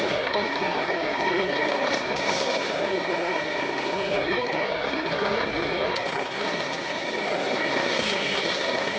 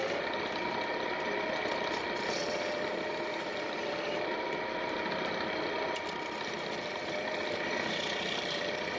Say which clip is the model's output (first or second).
first